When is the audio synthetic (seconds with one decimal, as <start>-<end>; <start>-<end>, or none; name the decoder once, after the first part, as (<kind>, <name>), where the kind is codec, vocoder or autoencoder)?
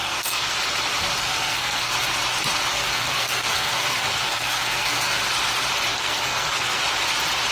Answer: 0.0-0.5 (codec, SNAC); 1.2-1.9; 2.7-5.2; 5.9-6.8